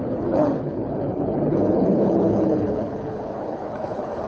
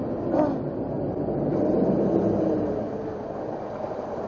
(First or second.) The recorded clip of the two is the second